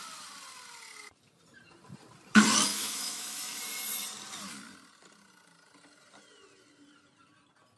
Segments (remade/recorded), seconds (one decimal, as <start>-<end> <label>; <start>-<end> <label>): 0.0-2.7 recorded; 2.7-3.6 remade; 3.6-7.8 recorded